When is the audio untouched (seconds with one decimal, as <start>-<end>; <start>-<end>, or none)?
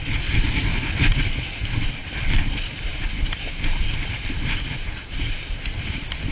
0.0-0.7; 1.2-6.3